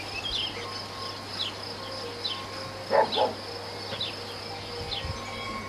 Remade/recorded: recorded